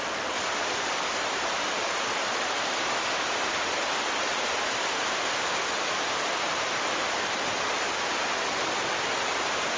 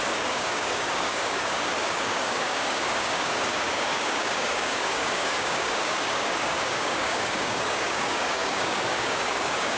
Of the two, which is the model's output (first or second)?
second